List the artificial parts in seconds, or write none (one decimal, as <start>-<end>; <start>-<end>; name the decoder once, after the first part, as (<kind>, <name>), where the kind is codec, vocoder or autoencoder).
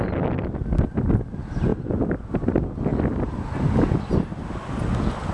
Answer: none